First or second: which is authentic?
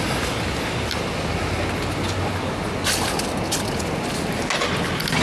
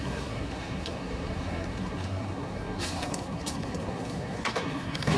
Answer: first